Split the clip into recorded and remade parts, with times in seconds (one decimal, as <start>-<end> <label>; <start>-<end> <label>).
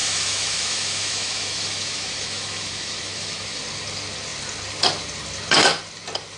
0.0-3.6 remade; 3.6-6.4 recorded